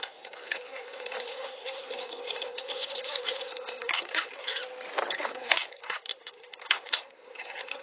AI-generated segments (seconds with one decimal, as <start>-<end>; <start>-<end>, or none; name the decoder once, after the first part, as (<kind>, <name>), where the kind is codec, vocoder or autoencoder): 0.0-4.6 (codec, SNAC); 5.1-7.8